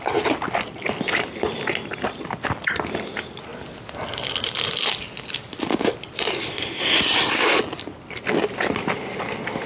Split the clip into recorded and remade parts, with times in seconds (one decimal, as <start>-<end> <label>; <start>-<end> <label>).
0.0-9.7 recorded